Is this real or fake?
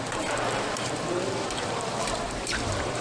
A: fake